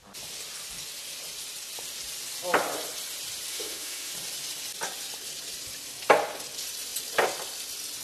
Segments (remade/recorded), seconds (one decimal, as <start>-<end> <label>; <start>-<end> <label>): 0.0-3.5 recorded; 3.5-4.1 remade; 4.1-8.0 recorded